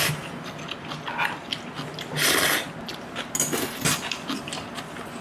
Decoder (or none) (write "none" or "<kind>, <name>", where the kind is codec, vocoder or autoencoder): none